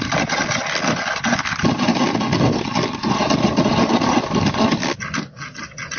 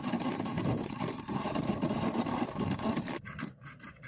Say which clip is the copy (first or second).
second